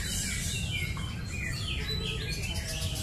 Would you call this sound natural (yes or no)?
yes